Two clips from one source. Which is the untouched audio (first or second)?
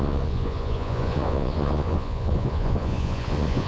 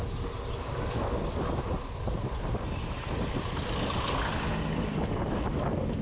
second